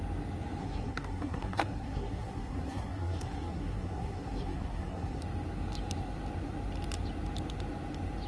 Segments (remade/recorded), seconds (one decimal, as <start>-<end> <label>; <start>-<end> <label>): 0.0-0.6 recorded; 0.6-5.2 remade; 5.2-8.3 recorded